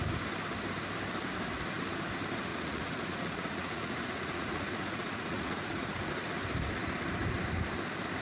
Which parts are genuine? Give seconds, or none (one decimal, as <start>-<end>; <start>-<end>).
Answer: 0.0-2.5; 6.1-8.2